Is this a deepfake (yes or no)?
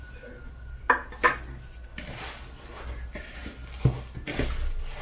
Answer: no